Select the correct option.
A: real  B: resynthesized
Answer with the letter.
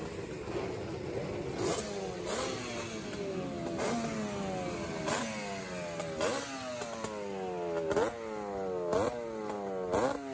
A